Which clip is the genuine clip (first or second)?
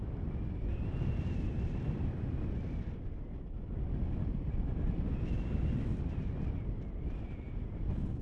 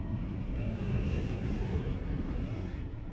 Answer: first